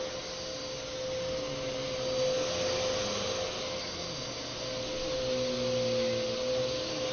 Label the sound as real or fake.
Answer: real